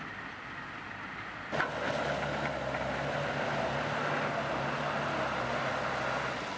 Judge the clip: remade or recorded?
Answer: recorded